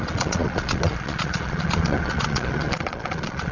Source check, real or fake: fake